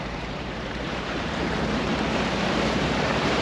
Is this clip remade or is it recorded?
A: remade